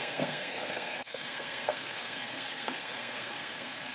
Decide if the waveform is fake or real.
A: fake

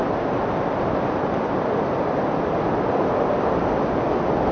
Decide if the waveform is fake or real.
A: real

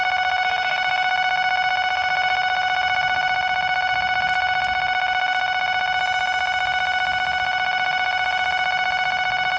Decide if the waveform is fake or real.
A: real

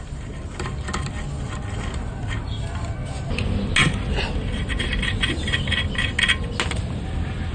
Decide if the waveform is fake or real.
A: real